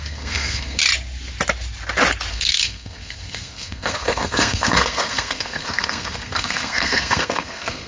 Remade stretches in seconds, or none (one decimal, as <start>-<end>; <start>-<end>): 0.0-0.8; 2.3-7.9